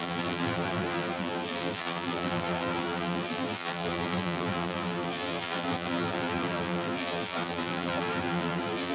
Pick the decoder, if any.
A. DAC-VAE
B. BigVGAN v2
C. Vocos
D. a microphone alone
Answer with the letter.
B